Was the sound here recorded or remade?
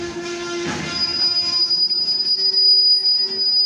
recorded